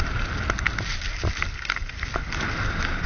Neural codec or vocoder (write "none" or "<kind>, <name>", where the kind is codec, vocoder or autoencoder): none